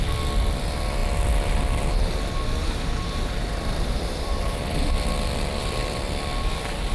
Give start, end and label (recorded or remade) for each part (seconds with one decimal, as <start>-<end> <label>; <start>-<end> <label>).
0.0-2.6 recorded; 2.6-4.9 remade; 4.9-6.9 recorded